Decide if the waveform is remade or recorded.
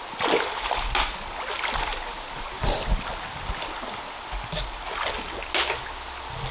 recorded